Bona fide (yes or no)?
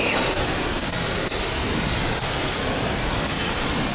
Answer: yes